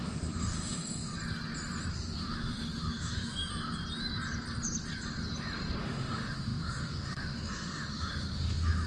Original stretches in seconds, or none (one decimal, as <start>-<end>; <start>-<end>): 1.1-1.9; 3.5-5.8